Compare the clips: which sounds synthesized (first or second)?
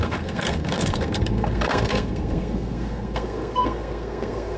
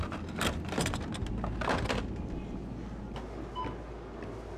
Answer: first